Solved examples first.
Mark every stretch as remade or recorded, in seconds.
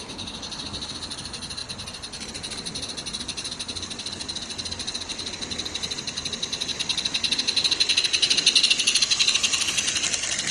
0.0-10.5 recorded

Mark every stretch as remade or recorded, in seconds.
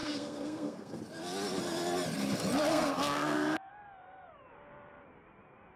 0.0-1.0 remade; 1.0-2.7 recorded; 2.7-3.7 remade; 3.7-5.8 recorded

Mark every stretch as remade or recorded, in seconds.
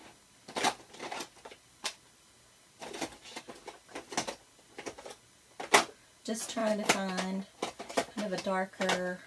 0.0-9.3 recorded